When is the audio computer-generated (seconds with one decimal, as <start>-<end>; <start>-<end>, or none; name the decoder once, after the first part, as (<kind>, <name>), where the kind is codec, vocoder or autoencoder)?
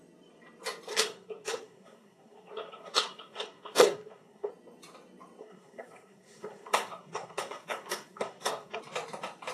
0.9-4.5 (codec, SNAC); 5.4-8.8